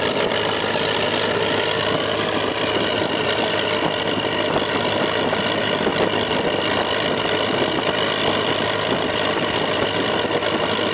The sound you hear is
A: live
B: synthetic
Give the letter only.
A